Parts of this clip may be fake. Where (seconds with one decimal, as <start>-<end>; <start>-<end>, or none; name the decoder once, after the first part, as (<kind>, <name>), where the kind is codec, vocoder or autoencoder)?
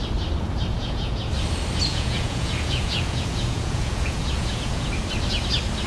0.7-1.3 (vocoder, Vocos); 1.9-4.9